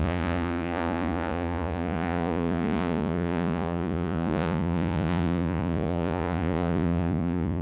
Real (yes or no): no